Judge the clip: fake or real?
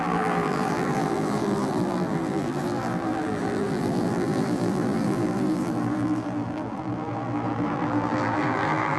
fake